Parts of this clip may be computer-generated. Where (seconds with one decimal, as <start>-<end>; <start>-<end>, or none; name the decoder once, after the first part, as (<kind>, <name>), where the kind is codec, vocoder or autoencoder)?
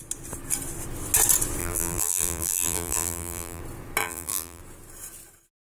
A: 1.6-3.6 (vocoder, BigVGAN v2); 4.0-4.6